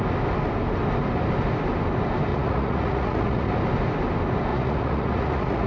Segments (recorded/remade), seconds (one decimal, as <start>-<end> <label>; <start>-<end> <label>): 0.0-2.3 recorded; 2.3-3.5 remade; 3.5-4.5 recorded; 4.5-5.7 remade